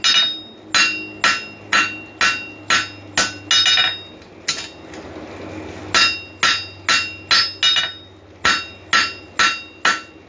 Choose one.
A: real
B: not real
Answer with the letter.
A